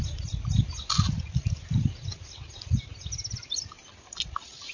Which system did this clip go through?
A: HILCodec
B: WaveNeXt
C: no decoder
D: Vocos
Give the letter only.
C